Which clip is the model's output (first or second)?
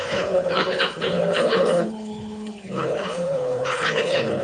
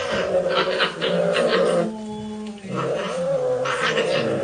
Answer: first